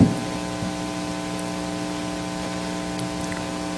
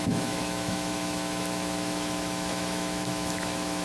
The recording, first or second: first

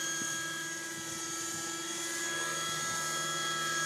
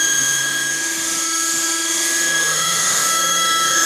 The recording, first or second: first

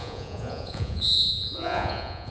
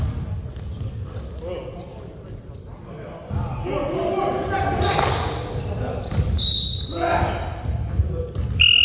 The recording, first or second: second